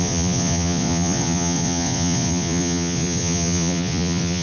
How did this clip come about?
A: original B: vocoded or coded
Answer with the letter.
B